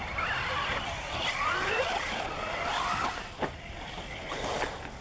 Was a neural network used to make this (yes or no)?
no